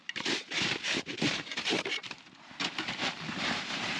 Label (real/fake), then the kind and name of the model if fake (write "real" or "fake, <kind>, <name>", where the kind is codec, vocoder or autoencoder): fake, vocoder, BigVGAN v2